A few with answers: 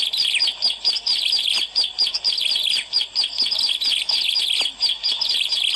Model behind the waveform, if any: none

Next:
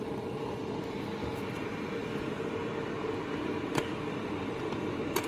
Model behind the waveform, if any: none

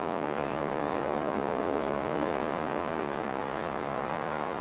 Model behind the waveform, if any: vocoder, Vocos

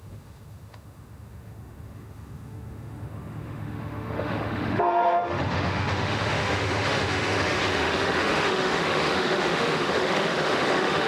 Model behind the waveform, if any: autoencoder, DAC-VAE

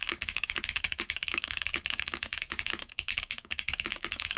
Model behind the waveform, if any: codec, DAC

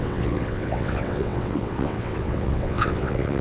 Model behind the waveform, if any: vocoder, WaveNeXt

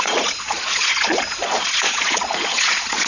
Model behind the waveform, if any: vocoder, Vocos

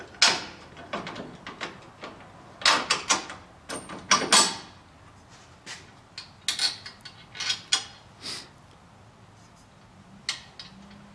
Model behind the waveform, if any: none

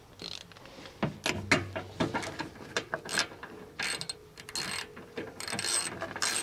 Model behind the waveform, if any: none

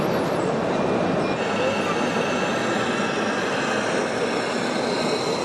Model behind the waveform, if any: none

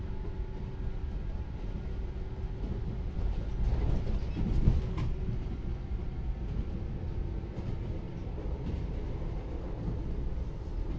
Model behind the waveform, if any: none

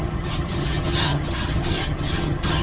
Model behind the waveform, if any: vocoder, HiFi-GAN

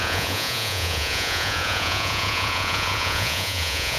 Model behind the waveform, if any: vocoder, Vocos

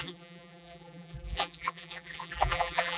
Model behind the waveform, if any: vocoder, BigVGAN v2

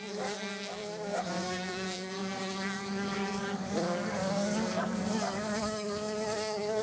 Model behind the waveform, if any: codec, DAC